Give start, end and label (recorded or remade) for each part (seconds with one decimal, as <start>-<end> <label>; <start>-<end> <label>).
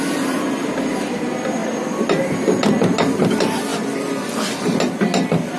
0.0-1.6 recorded; 1.6-2.7 remade; 2.7-3.7 recorded; 3.7-4.3 remade; 4.3-5.6 recorded